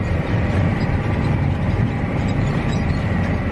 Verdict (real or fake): fake